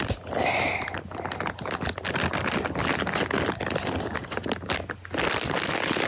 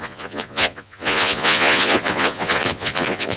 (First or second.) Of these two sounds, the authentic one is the first